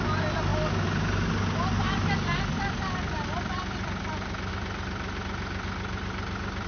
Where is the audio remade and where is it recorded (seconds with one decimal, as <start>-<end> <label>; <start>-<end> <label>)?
0.0-6.7 recorded

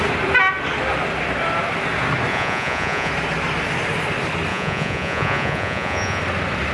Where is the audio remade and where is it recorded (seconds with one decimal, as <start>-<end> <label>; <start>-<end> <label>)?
0.0-2.3 recorded; 2.3-3.1 remade; 3.1-4.5 recorded; 4.5-6.2 remade; 6.2-6.7 recorded

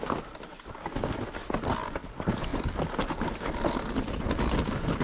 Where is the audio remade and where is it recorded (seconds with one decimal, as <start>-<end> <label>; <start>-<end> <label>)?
0.0-5.0 recorded

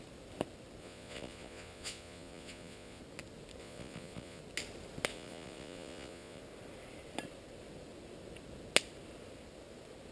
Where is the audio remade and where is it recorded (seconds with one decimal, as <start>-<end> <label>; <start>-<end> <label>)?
0.0-0.8 recorded; 0.8-3.0 remade; 3.0-3.6 recorded; 3.6-4.4 remade; 4.4-5.1 recorded; 5.1-6.4 remade; 6.4-10.1 recorded

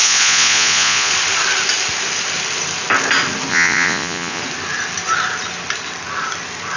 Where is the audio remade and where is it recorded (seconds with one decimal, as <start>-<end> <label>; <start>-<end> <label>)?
0.0-1.1 remade; 1.1-3.5 recorded; 3.5-4.4 remade; 4.4-6.8 recorded

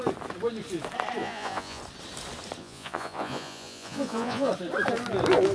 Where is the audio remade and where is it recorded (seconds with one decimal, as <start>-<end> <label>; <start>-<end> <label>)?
0.0-1.2 recorded; 1.2-1.8 remade; 1.8-2.6 recorded; 2.6-4.5 remade; 4.5-5.5 recorded

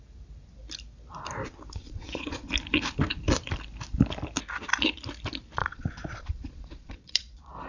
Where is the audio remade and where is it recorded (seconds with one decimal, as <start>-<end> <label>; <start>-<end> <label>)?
0.0-1.8 recorded; 1.8-2.5 remade; 2.5-5.6 recorded; 5.6-7.7 remade

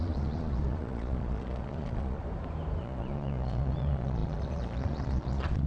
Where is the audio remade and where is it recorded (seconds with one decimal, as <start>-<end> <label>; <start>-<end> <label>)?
0.0-2.2 remade; 2.2-2.8 recorded; 2.8-5.7 remade